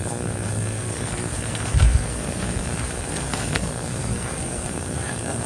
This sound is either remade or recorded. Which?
remade